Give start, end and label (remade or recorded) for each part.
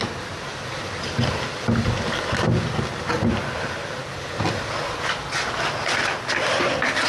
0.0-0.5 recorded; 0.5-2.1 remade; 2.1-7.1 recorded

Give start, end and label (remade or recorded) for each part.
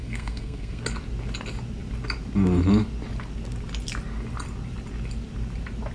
0.0-0.8 remade; 0.8-5.9 recorded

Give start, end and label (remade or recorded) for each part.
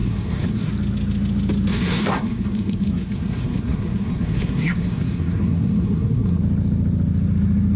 0.0-0.7 remade; 0.7-1.7 recorded; 1.7-6.4 remade; 6.4-7.8 recorded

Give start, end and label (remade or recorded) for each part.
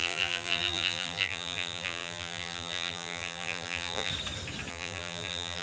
0.0-4.1 remade; 4.1-4.7 recorded; 4.7-5.6 remade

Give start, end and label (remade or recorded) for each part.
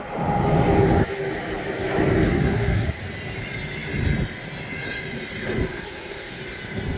0.0-2.3 recorded; 2.3-3.0 remade; 3.0-5.7 recorded; 5.7-6.4 remade; 6.4-7.0 recorded